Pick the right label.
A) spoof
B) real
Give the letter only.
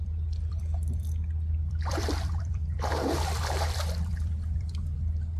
A